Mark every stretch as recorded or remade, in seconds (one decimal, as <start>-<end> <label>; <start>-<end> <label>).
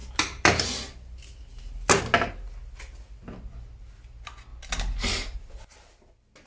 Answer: 0.0-2.0 remade; 2.0-6.5 recorded